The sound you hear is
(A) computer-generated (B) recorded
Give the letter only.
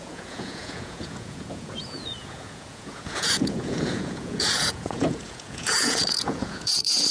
A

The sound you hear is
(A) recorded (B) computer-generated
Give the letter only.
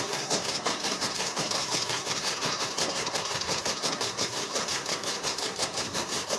B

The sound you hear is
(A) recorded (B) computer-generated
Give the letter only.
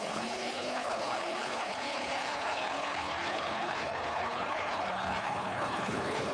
B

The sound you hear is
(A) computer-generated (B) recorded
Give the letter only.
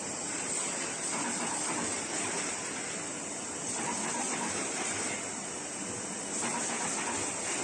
B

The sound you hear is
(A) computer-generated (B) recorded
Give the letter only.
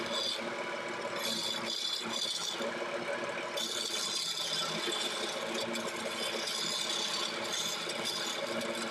B